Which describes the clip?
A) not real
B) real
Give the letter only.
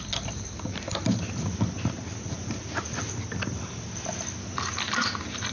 B